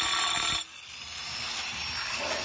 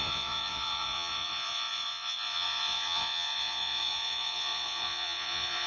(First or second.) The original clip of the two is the first